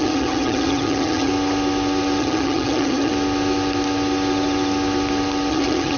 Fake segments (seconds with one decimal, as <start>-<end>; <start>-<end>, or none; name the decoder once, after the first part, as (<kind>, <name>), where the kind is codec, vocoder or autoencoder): 0.0-1.3 (vocoder, HiFi-GAN); 2.2-3.1; 5.5-6.0